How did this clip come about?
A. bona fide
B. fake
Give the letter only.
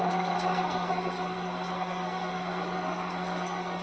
B